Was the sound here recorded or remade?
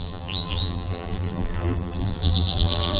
remade